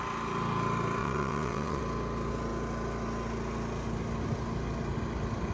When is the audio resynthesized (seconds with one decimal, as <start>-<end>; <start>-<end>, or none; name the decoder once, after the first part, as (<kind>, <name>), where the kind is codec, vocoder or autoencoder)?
1.0-1.8 (vocoder, Vocos)